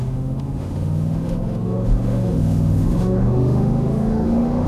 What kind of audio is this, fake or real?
fake